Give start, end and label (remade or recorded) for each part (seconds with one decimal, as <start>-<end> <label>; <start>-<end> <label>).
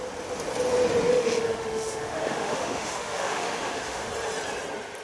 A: 0.0-1.1 recorded; 1.1-4.1 remade; 4.1-5.0 recorded